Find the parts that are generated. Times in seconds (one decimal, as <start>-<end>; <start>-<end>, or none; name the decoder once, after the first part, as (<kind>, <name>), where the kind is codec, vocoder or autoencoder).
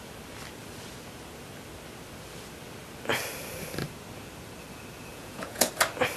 5.1-5.7 (vocoder, Vocos)